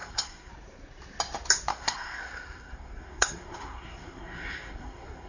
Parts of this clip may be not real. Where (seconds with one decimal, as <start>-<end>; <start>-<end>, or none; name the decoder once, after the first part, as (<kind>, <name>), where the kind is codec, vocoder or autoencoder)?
0.0-0.5 (codec, SNAC); 1.7-5.3

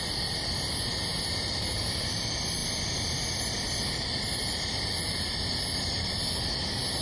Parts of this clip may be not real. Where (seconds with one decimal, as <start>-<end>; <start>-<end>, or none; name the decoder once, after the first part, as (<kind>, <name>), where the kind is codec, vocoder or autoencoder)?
none

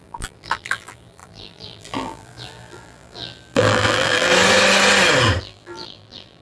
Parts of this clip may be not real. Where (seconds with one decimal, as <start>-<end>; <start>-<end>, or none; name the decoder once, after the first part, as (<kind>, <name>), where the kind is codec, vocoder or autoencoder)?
0.0-4.3 (vocoder, BigVGAN v2); 5.4-6.4

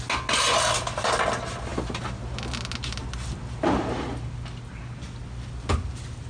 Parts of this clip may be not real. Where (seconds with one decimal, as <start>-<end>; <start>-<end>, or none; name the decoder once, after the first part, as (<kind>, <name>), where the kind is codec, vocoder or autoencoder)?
none

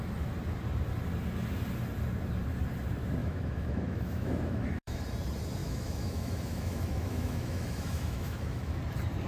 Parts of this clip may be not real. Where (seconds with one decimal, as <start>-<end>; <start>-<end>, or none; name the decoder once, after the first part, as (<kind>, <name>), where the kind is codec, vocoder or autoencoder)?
3.2-5.0 (autoencoder, DAC-VAE); 5.6-8.8

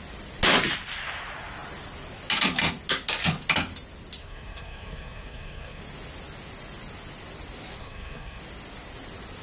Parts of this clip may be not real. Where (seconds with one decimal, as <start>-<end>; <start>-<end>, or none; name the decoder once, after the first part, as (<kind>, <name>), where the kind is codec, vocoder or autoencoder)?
4.2-5.8 (codec, SNAC); 7.8-8.4

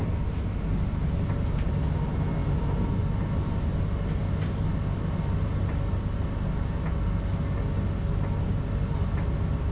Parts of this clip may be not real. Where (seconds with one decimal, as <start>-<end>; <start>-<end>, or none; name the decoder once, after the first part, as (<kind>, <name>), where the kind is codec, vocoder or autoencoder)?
none

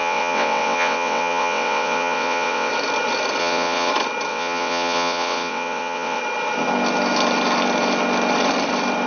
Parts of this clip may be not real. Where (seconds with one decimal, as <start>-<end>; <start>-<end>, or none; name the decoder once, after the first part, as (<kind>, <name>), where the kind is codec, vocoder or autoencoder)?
0.0-2.7 (vocoder, WaveNeXt); 3.4-3.9; 4.3-6.2